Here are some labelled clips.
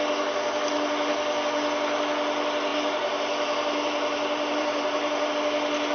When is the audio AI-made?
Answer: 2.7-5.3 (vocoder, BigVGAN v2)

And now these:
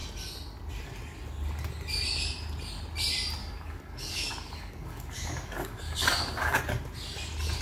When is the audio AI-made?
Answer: 3.4-6.6 (codec, DAC)

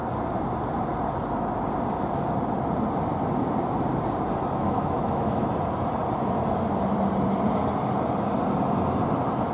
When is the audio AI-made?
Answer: 4.6-5.5 (autoencoder, DAC-VAE)

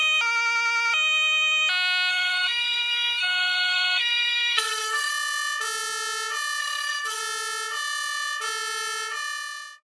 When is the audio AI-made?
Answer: 2.1-5.1 (codec, SNAC); 6.6-7.2

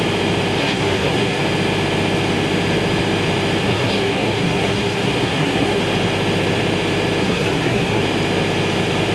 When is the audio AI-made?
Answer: 0.6-1.4 (codec, SNAC); 3.6-5.8; 7.2-8.0